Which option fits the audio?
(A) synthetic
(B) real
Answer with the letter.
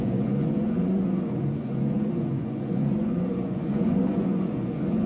A